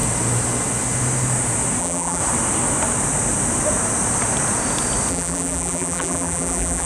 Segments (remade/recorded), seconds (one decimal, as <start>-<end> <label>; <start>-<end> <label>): 0.0-1.8 recorded; 1.8-2.2 remade; 2.2-5.1 recorded; 5.1-6.9 remade